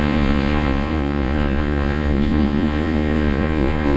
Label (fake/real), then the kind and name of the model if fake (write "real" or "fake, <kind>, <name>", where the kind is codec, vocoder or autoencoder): fake, vocoder, Vocos